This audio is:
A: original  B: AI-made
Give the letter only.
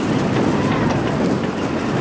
A